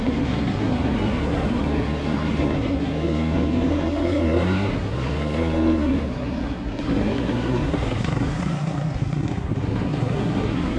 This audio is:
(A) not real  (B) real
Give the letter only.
A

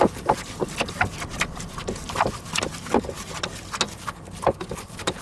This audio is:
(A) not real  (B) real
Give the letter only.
B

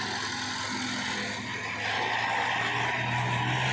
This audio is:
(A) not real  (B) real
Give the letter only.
B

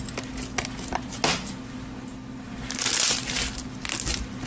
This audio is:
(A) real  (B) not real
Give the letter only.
A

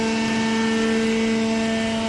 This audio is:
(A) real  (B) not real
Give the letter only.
A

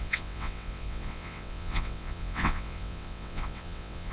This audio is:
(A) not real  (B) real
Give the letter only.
A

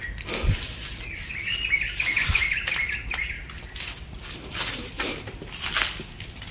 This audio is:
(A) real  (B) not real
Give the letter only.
A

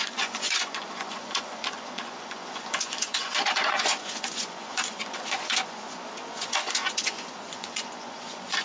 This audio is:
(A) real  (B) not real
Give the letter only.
B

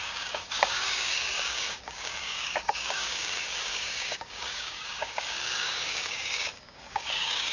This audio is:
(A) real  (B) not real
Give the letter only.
B